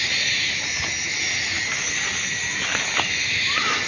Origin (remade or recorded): recorded